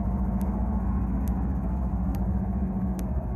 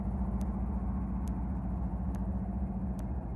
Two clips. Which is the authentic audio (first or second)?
second